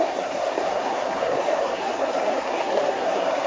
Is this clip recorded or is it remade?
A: remade